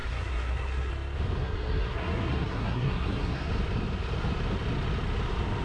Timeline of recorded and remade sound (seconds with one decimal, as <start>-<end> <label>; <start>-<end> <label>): 0.0-0.9 remade; 0.9-1.4 recorded; 1.4-3.5 remade; 3.5-5.6 recorded